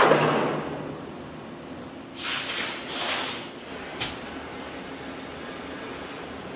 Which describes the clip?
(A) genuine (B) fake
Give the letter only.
A